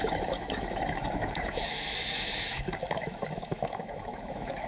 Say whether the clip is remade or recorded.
remade